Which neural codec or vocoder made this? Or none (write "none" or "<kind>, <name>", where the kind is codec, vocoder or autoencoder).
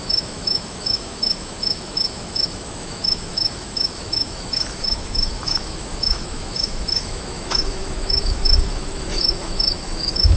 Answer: autoencoder, DAC-VAE